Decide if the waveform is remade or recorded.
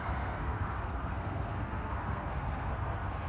remade